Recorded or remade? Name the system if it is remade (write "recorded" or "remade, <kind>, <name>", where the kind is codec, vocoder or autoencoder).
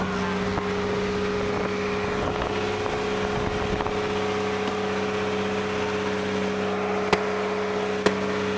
recorded